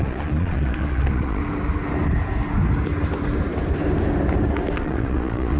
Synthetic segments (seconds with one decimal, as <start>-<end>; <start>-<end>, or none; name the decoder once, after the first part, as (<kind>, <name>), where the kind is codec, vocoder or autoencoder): 0.0-1.4 (vocoder, Vocos); 4.8-5.6